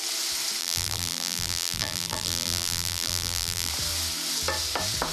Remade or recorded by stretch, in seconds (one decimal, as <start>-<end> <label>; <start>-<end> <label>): 0.0-0.6 recorded; 0.6-3.7 remade; 3.7-5.1 recorded